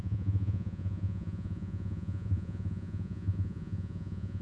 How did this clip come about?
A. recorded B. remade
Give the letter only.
B